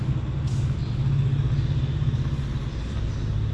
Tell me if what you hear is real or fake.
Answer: real